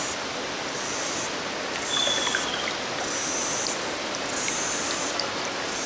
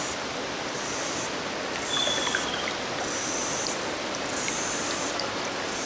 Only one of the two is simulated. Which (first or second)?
second